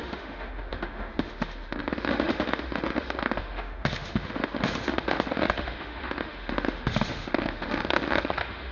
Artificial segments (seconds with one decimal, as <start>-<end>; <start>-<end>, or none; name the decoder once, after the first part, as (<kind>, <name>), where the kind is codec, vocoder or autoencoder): 0.0-8.7 (autoencoder, DAC-VAE)